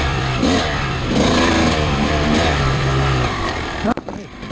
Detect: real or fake fake